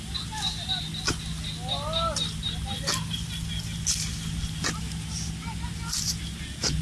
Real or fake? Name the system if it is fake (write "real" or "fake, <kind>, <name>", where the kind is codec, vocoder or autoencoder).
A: real